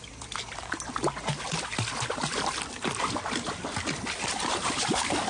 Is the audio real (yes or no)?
yes